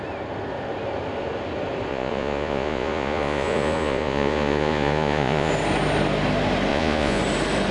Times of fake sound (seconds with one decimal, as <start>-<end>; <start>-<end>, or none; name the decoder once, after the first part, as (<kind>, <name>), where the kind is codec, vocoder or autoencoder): 1.9-5.5 (vocoder, Vocos); 6.7-7.2